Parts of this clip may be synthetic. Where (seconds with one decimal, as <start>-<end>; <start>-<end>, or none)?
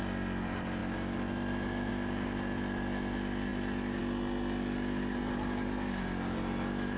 none